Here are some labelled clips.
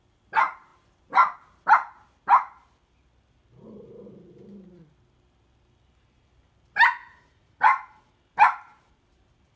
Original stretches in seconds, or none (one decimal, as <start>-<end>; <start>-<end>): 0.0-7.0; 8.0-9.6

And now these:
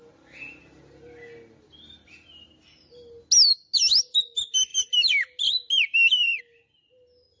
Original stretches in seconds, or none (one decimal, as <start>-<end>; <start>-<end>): 0.0-7.4

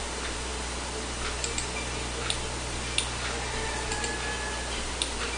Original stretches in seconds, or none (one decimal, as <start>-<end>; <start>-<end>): 0.0-5.4